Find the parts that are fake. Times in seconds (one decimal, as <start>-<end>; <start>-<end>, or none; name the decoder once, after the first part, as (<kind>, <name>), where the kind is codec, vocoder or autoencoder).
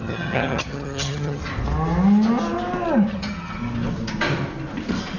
0.0-1.4 (vocoder, HiFi-GAN); 3.1-3.6